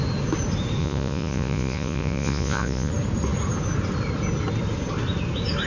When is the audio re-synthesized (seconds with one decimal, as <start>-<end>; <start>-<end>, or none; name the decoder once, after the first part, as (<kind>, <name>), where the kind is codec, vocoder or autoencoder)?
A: 0.8-2.9 (vocoder, Vocos)